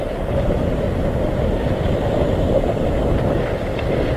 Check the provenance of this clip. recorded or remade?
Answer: remade